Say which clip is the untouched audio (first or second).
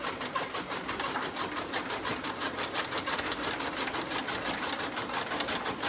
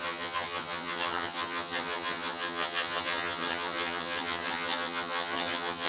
first